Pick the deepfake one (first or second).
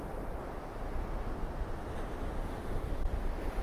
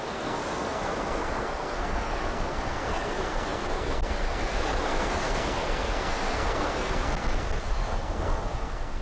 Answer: second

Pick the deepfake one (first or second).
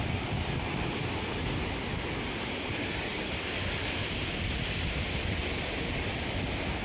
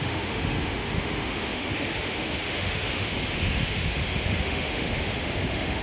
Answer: second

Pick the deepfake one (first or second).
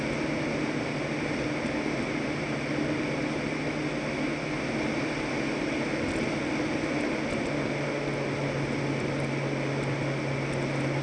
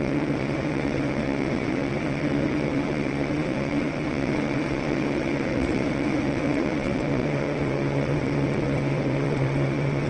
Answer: second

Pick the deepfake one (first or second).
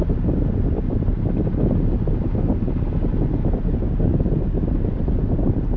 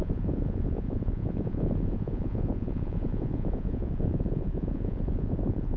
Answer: second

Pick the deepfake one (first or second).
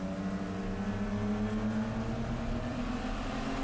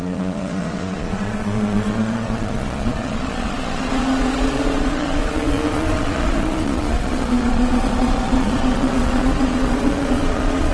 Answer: second